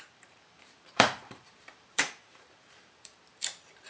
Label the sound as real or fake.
fake